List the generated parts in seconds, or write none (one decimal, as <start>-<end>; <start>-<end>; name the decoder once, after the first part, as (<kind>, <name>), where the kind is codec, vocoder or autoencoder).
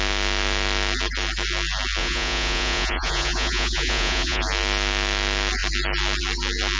2.0-4.4 (vocoder, Vocos)